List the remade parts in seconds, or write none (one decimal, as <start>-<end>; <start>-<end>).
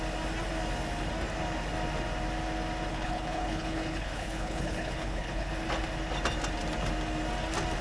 2.9-5.5